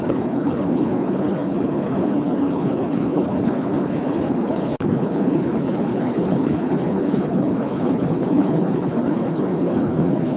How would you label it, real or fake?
fake